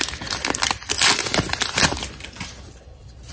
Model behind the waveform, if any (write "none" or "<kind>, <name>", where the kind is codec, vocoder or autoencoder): none